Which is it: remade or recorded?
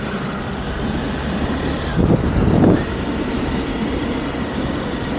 recorded